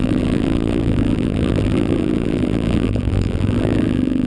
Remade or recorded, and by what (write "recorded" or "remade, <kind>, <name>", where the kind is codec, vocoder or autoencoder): remade, vocoder, BigVGAN v2